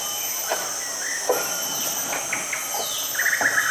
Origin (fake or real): real